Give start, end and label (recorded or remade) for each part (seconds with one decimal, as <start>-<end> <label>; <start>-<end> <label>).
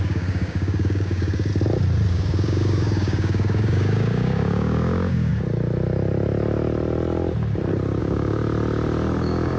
0.0-1.5 remade; 1.5-2.1 recorded; 2.1-5.3 remade; 5.3-8.0 recorded; 8.0-8.4 remade; 8.4-9.2 recorded; 9.2-9.6 remade